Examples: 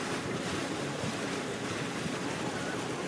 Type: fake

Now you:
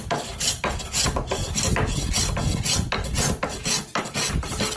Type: real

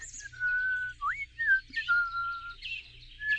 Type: real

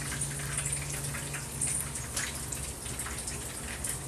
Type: real